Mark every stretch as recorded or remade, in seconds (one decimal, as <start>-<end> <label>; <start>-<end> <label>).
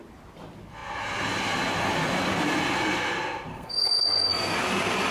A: 0.0-3.5 recorded; 3.5-4.3 remade; 4.3-5.1 recorded